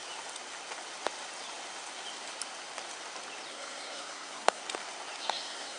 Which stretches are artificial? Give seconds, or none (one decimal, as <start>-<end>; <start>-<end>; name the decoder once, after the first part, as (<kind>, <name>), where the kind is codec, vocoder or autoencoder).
3.5-4.6 (codec, SNAC); 5.2-5.8